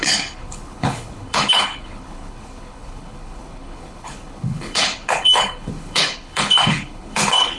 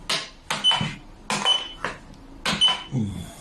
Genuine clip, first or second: second